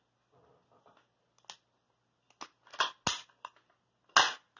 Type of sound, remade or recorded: recorded